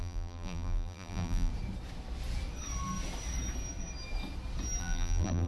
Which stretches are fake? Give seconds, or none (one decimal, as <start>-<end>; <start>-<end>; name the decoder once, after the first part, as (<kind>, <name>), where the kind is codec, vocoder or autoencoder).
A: 0.0-1.5 (vocoder, BigVGAN v2); 4.8-5.5